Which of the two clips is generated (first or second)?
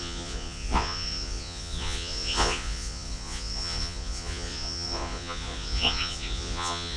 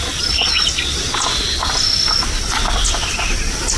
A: first